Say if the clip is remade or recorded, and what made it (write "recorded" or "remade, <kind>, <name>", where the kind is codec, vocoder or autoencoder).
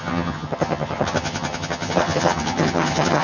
remade, vocoder, HiFi-GAN